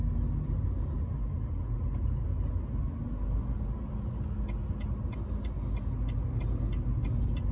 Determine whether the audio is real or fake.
real